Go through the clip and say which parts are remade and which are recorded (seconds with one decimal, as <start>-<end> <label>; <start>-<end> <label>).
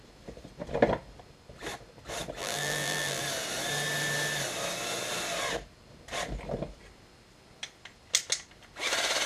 0.0-2.4 recorded; 2.4-3.2 remade; 3.2-9.3 recorded